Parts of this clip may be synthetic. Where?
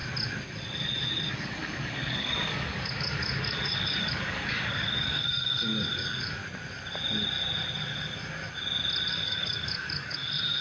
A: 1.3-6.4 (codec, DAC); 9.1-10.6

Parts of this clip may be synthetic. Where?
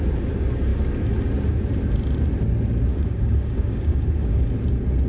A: 2.9-4.5 (codec, DAC)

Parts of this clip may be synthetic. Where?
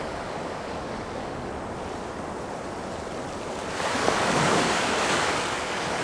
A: 0.0-1.5 (codec, DAC); 3.5-6.0